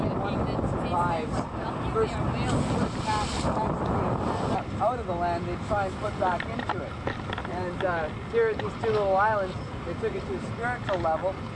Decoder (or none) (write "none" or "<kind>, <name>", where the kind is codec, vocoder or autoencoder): none